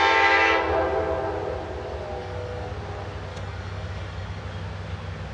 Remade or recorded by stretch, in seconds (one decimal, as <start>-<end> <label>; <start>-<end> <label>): 0.0-2.2 recorded; 2.2-2.7 remade; 2.7-3.3 recorded; 3.3-4.4 remade; 4.4-5.3 recorded